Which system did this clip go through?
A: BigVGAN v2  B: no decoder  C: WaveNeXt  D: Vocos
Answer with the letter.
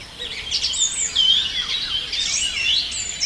B